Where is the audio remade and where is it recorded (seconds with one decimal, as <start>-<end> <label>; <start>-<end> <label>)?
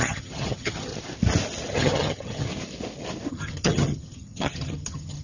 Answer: 0.0-0.9 remade; 0.9-1.7 recorded; 1.7-2.5 remade; 2.5-3.3 recorded; 3.3-5.2 remade